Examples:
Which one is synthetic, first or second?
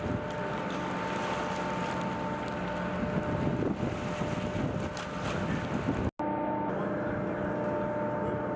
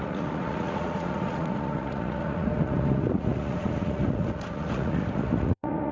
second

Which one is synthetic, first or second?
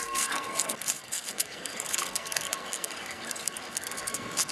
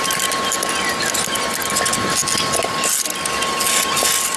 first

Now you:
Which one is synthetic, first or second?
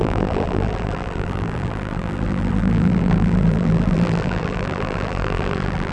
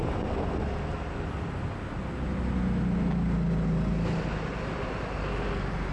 first